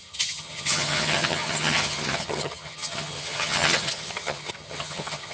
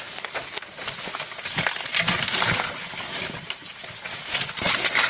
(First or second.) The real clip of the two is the second